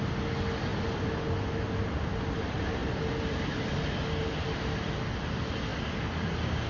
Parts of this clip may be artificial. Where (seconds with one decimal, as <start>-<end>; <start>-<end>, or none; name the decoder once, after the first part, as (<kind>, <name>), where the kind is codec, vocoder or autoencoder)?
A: none